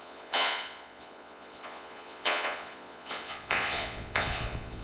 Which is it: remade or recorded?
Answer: remade